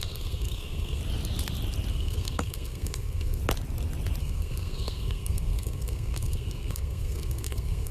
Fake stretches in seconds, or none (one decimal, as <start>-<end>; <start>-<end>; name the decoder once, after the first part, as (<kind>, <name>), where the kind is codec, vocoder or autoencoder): 0.0-1.0 (codec, SNAC); 1.9-3.4; 4.2-7.9